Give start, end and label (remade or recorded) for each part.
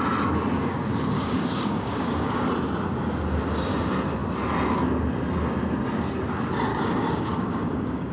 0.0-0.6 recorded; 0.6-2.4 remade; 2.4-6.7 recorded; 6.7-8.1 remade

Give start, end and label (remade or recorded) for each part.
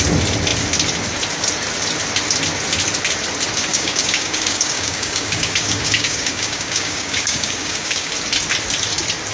0.0-3.7 recorded; 3.7-8.1 remade; 8.1-9.3 recorded